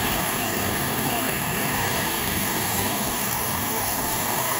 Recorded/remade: remade